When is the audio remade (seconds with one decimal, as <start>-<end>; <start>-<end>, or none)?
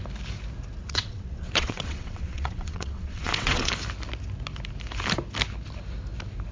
0.8-3.7